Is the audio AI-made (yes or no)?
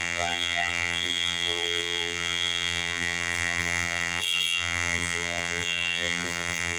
yes